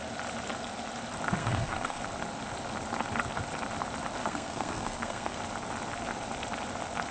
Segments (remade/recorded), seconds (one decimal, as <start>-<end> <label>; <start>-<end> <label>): 0.0-1.4 recorded; 1.4-2.0 remade; 2.0-4.2 recorded; 4.2-5.4 remade; 5.4-7.1 recorded